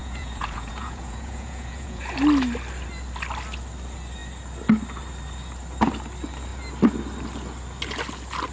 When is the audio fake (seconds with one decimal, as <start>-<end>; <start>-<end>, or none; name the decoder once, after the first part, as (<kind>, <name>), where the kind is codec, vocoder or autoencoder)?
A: 0.0-2.0 (vocoder, Vocos)